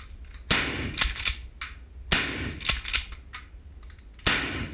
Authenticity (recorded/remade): recorded